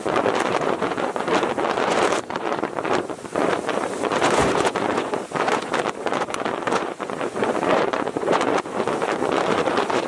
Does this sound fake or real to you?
fake